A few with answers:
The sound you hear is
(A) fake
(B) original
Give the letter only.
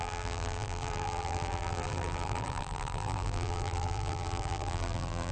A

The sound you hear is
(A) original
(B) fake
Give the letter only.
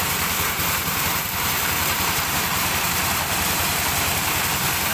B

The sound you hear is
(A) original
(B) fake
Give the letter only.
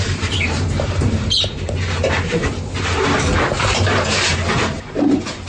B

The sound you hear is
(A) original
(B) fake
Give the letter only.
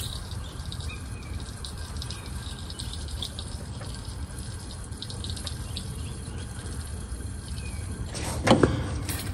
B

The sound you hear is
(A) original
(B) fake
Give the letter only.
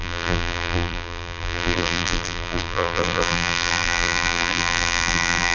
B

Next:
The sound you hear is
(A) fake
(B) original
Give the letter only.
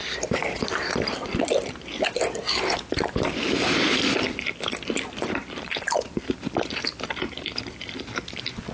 A